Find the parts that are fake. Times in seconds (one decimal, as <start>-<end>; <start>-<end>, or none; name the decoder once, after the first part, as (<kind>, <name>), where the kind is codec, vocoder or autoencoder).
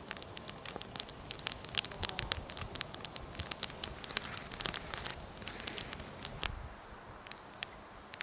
none